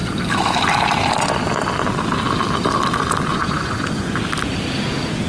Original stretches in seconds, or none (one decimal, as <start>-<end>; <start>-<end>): 0.0-3.3; 4.2-5.3

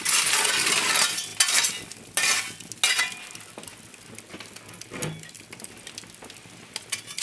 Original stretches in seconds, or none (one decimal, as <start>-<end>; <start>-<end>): 0.0-7.2

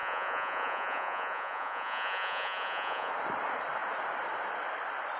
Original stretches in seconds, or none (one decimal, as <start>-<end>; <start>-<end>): 3.1-5.2

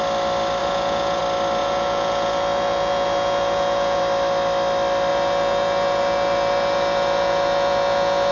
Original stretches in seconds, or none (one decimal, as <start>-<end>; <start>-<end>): 0.0-0.6; 1.2-1.6; 4.0-5.1